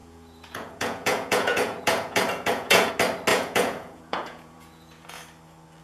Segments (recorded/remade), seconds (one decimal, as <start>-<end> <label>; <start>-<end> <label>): 0.0-2.9 remade; 2.9-3.3 recorded; 3.3-5.2 remade; 5.2-5.8 recorded